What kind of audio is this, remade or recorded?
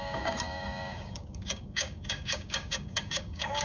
remade